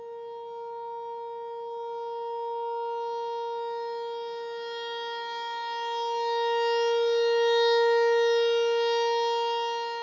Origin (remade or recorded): recorded